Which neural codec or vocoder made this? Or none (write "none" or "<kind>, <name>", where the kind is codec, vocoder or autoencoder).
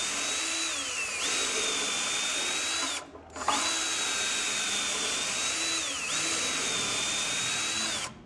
none